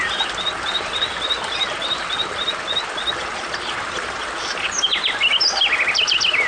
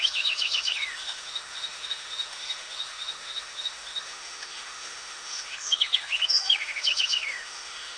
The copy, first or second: second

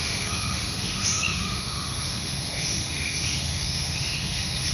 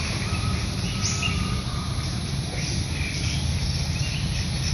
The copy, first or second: first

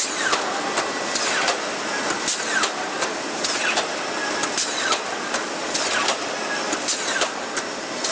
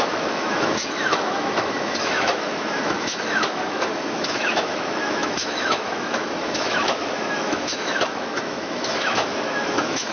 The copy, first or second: second